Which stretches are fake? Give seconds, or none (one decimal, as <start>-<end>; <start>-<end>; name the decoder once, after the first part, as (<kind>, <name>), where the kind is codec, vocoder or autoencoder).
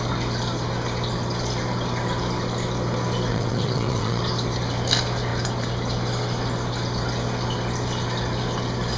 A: 3.3-4.2 (vocoder, WaveNeXt)